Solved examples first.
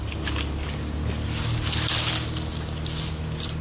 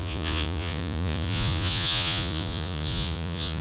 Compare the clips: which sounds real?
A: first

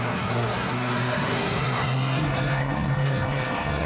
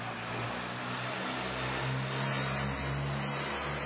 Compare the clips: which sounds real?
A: second